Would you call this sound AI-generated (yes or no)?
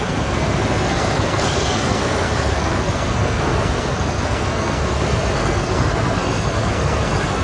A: yes